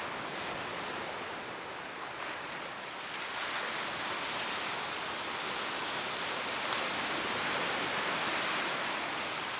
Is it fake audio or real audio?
real